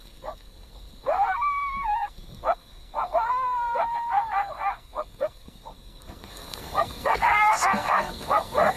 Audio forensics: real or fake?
fake